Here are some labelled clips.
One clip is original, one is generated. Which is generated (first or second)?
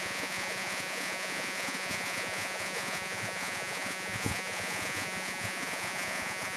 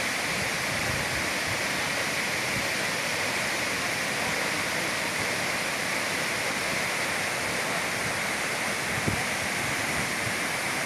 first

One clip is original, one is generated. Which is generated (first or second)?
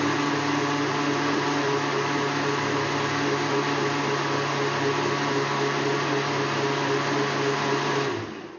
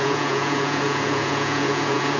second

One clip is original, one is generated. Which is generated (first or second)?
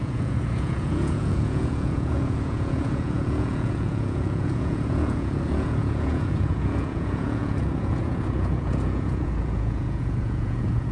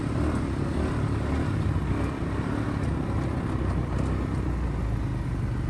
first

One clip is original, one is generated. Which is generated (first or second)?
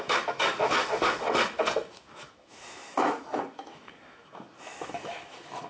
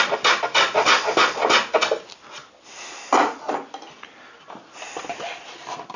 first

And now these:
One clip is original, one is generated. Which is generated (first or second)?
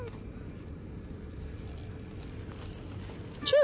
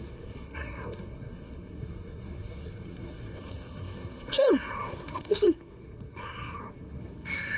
second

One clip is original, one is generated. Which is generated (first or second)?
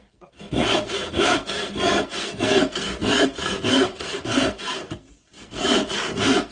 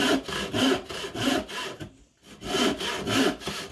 first